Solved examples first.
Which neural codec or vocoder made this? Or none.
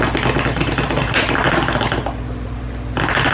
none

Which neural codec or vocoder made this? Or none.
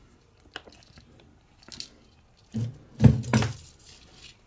none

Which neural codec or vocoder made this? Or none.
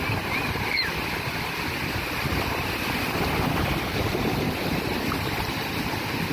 none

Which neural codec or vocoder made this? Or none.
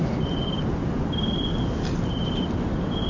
none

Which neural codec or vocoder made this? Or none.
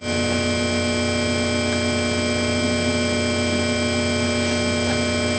none